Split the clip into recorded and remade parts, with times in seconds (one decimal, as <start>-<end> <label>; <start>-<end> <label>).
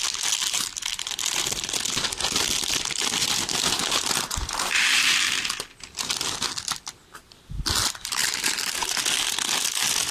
0.0-3.8 recorded; 3.8-5.4 remade; 5.4-8.2 recorded; 8.2-8.9 remade; 8.9-10.1 recorded